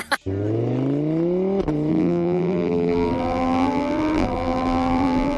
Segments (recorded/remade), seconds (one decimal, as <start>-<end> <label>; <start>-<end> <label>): 0.0-1.9 recorded; 1.9-5.4 remade

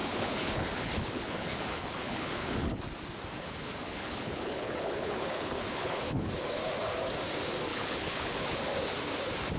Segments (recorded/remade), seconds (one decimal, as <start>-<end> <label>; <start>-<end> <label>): 0.0-2.8 remade; 2.8-3.4 recorded; 3.4-6.3 remade; 6.3-7.7 recorded; 7.7-8.6 remade; 8.6-9.6 recorded

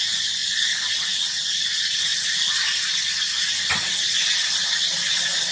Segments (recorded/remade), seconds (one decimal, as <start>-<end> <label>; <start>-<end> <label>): 0.0-5.5 recorded

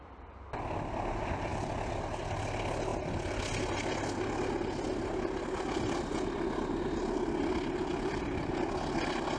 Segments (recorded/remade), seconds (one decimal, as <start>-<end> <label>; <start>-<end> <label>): 0.0-1.5 recorded; 1.5-2.1 remade; 2.1-7.9 recorded; 7.9-8.5 remade; 8.5-9.4 recorded

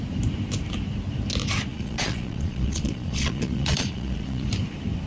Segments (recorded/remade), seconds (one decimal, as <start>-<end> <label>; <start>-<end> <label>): 0.0-1.7 recorded; 1.7-4.5 remade; 4.5-5.1 recorded

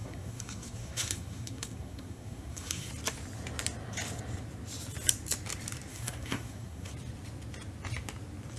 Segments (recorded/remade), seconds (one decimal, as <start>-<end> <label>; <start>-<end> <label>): 0.0-2.9 remade; 2.9-5.9 recorded; 5.9-6.9 remade; 6.9-8.6 recorded